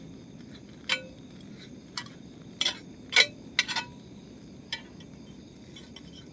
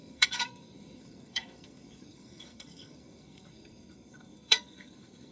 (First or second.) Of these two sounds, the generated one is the second